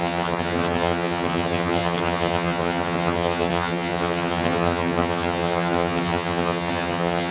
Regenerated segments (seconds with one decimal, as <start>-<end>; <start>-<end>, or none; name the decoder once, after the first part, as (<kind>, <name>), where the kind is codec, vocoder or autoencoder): 0.0-7.3 (vocoder, HiFi-GAN)